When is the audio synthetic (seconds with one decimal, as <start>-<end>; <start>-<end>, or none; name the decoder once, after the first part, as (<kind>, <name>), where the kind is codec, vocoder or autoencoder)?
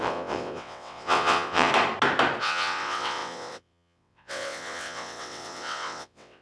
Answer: 0.0-1.7 (vocoder, WaveNeXt); 2.4-6.4